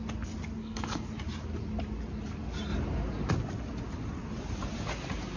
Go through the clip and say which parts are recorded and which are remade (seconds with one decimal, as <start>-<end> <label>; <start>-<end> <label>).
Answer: 0.0-0.6 recorded; 0.6-1.1 remade; 1.1-5.4 recorded